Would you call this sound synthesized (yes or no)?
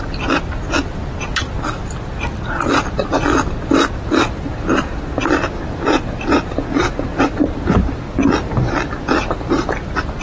no